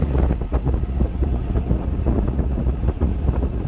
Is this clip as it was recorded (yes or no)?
no